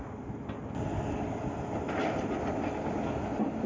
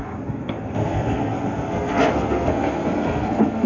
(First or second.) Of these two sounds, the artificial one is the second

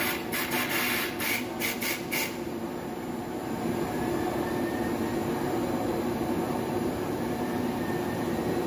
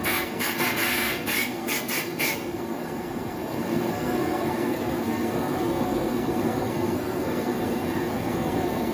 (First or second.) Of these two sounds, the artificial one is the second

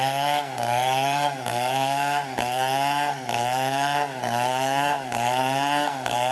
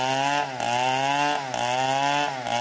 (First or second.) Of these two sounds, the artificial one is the first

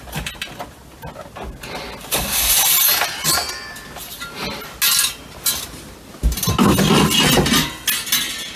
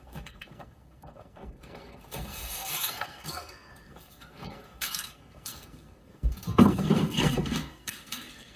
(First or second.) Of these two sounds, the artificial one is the second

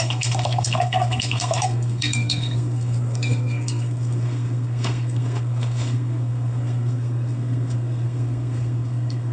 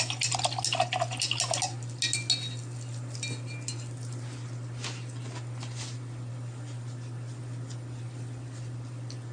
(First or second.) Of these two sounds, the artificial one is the first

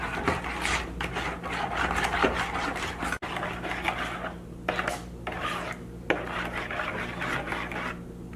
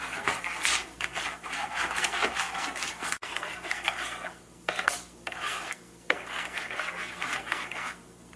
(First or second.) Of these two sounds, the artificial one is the second